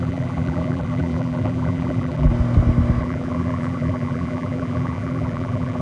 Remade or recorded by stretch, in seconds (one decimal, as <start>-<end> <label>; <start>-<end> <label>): 0.0-2.3 remade; 2.3-3.0 recorded; 3.0-5.8 remade